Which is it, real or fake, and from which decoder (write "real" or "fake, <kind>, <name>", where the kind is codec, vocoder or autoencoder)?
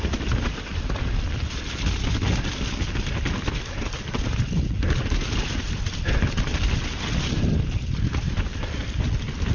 real